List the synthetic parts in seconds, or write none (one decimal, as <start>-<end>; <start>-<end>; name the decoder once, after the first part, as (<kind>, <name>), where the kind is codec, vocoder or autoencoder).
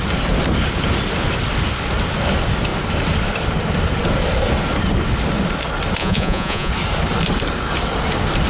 6.0-6.7 (vocoder, Vocos)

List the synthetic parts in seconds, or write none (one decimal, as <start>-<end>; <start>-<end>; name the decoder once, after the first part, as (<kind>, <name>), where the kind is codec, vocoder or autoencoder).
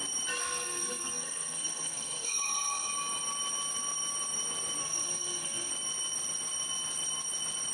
0.4-2.9 (codec, SNAC); 4.8-5.7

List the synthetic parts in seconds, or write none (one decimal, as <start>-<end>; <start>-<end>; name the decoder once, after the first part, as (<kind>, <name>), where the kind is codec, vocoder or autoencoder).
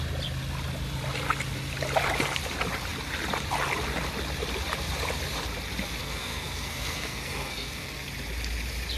6.0-8.0 (codec, SNAC)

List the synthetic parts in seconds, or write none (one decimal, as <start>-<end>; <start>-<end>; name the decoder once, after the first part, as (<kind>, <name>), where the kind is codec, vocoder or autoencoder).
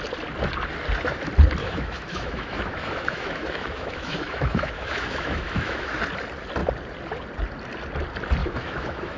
1.6-6.0 (autoencoder, DAC-VAE); 8.4-9.2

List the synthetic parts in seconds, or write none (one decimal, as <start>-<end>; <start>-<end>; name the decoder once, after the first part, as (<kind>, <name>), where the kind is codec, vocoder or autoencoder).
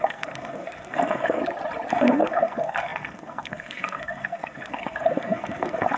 0.0-1.4 (codec, SNAC); 1.9-6.0